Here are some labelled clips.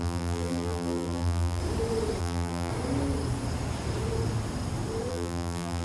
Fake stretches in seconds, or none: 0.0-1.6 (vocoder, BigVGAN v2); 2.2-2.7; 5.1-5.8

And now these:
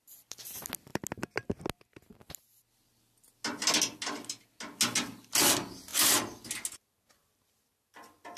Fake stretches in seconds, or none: none

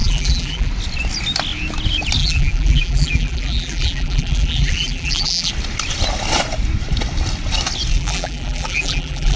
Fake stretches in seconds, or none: 0.0-0.7 (vocoder, BigVGAN v2); 2.2-5.5; 7.9-9.4

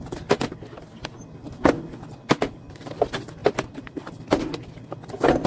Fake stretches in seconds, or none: 3.4-4.4 (vocoder, BigVGAN v2)

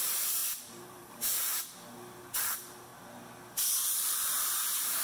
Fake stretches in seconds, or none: 0.0-1.5 (vocoder, BigVGAN v2); 2.4-2.9; 3.8-5.0

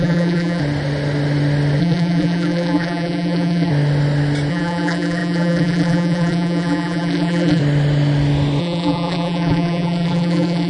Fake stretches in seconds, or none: 0.0-0.6 (vocoder, BigVGAN v2); 1.8-3.7; 4.5-7.6; 8.6-10.7